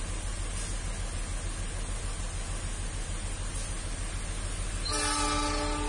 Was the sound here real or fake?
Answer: real